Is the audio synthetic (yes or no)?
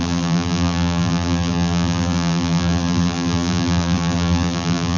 yes